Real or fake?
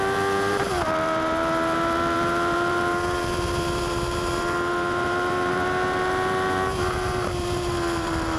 fake